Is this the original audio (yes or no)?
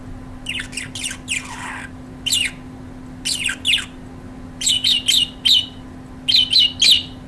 yes